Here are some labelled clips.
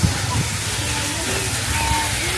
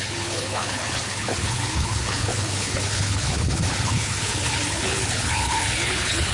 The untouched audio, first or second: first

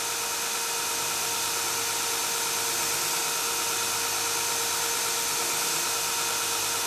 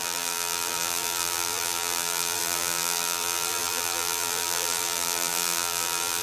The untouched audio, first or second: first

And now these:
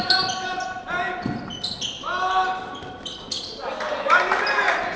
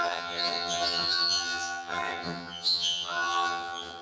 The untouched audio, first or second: first